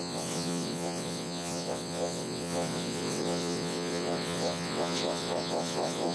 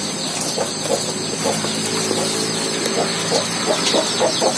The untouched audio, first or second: second